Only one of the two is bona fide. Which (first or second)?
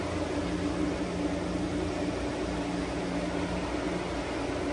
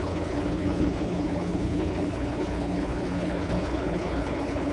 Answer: first